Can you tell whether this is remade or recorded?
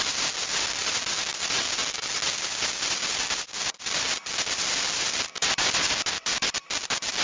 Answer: recorded